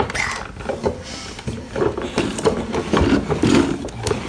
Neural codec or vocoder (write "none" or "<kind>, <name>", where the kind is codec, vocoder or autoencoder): none